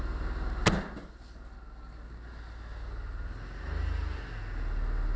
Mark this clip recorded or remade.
recorded